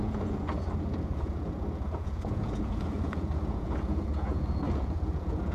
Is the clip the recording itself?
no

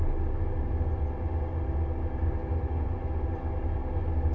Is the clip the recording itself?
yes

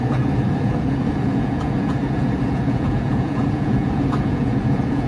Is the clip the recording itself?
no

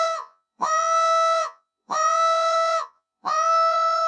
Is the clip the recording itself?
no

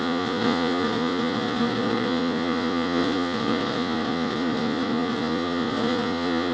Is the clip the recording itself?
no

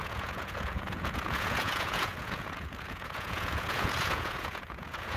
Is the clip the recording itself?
no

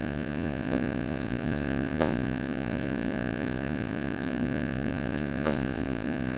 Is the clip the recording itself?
no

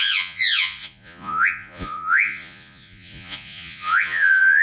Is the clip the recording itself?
no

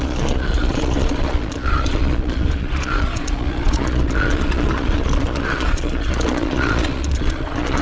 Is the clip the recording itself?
no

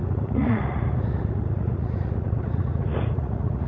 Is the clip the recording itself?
no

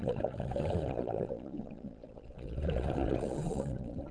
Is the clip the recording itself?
no